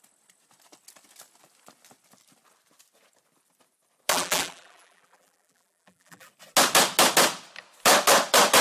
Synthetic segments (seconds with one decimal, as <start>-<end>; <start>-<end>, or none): 4.1-6.3